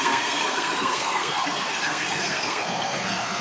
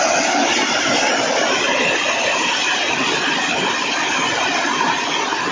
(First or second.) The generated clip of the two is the first